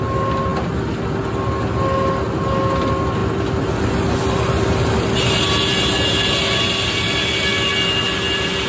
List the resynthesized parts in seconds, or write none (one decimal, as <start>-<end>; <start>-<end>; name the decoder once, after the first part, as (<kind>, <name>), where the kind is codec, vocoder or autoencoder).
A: none